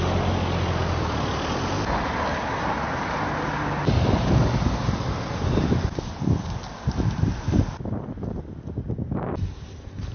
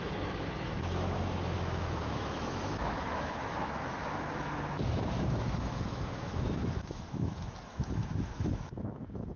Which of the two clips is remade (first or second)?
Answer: second